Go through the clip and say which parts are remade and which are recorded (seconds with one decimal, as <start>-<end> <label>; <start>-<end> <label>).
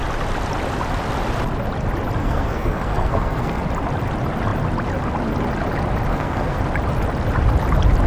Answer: 0.0-2.2 recorded; 2.2-3.6 remade; 3.6-6.1 recorded; 6.1-6.6 remade; 6.6-8.1 recorded